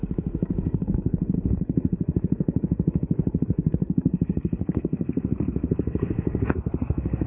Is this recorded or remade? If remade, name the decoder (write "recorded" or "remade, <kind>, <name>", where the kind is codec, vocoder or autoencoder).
remade, codec, SNAC